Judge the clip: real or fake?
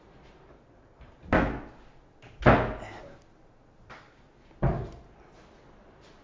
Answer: real